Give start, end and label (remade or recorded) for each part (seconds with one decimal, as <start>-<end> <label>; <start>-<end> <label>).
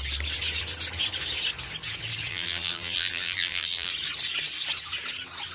0.0-2.3 recorded; 2.3-3.9 remade; 3.9-5.5 recorded